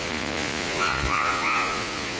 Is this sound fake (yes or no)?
yes